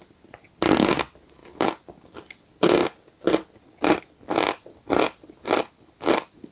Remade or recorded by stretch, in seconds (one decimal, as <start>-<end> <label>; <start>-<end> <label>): 0.0-6.5 recorded